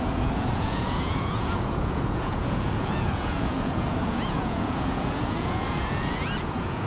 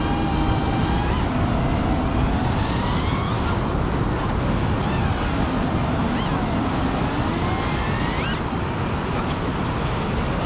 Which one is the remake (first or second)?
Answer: first